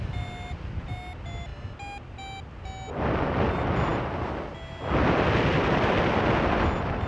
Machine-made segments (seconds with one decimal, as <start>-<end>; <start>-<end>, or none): none